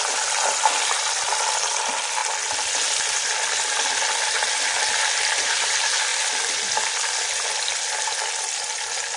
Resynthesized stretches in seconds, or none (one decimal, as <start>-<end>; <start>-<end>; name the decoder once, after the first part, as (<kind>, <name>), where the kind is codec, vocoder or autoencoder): none